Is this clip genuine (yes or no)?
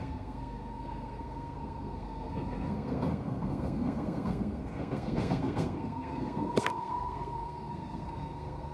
no